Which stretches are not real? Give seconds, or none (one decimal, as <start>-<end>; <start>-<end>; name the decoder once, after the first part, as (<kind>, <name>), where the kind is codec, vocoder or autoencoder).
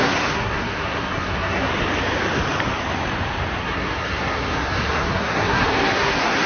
0.0-1.7 (codec, SNAC); 3.6-6.5